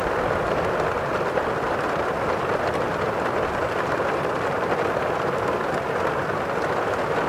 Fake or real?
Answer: real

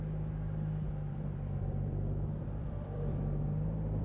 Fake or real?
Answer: fake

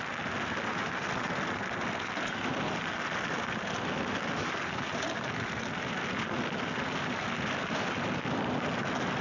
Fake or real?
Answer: real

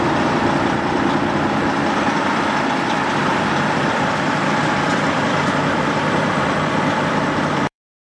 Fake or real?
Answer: fake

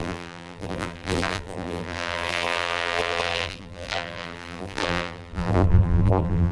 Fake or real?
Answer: fake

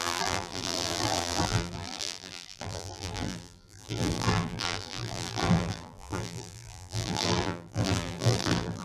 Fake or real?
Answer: fake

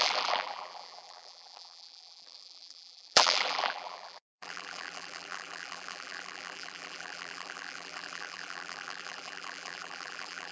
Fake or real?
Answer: fake